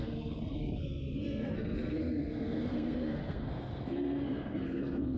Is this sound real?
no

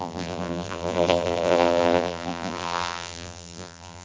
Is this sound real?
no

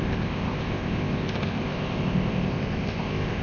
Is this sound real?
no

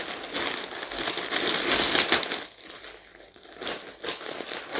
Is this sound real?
yes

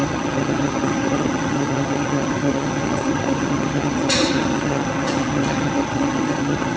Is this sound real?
no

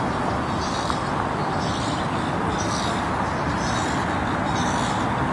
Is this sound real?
yes